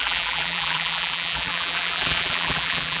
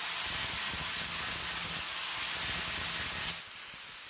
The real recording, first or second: second